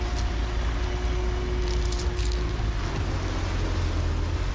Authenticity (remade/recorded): recorded